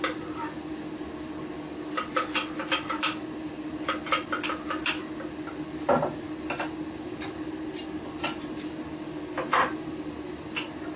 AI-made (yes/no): no